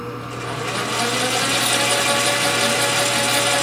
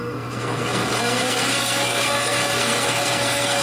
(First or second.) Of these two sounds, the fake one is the second